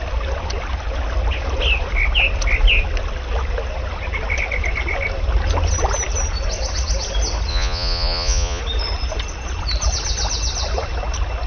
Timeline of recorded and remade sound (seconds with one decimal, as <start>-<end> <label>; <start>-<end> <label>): 0.0-7.5 recorded; 7.5-8.6 remade; 8.6-11.5 recorded